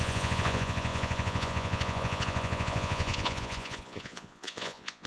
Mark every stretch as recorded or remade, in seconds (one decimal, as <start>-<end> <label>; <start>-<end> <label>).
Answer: 0.0-5.1 remade